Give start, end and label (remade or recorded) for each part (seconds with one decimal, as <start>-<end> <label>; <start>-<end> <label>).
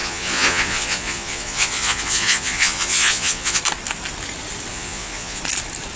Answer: 0.0-3.6 remade; 3.6-4.7 recorded; 4.7-5.4 remade; 5.4-6.0 recorded